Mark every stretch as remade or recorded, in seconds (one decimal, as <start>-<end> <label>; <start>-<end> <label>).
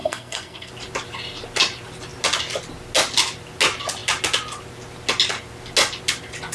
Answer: 0.0-0.7 remade; 0.7-6.5 recorded